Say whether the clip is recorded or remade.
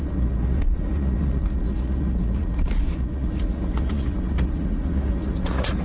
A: remade